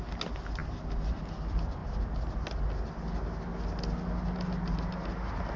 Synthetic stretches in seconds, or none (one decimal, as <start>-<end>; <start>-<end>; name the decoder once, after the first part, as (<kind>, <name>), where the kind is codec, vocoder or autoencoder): none

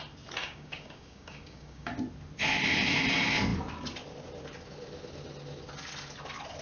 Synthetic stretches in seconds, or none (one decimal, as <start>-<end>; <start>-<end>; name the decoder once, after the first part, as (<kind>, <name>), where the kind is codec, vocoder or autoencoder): 0.4-1.9 (codec, DAC)

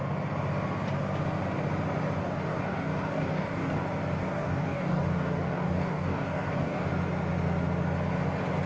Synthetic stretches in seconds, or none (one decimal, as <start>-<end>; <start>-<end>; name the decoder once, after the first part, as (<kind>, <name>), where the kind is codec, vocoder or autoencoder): 2.2-3.8 (codec, DAC); 4.2-6.9

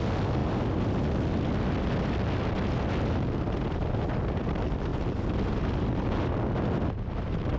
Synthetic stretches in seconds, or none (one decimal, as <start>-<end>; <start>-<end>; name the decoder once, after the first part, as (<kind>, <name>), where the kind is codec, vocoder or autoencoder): none